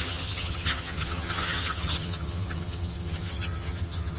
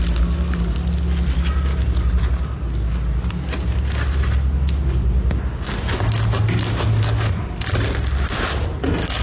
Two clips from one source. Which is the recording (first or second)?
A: second